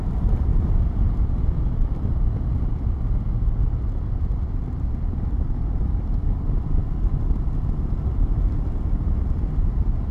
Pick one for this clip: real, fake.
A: fake